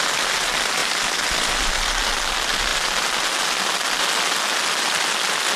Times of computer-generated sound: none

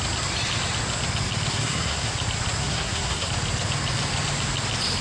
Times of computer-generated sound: 1.5-2.1 (codec, SNAC); 2.6-3.3

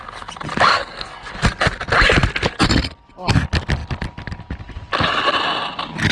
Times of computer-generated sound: 0.7-1.3 (codec, SNAC)